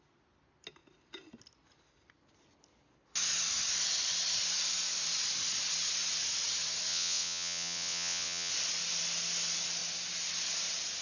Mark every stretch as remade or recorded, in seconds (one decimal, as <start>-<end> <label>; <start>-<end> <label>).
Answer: 0.0-6.9 recorded; 6.9-8.5 remade; 8.5-11.0 recorded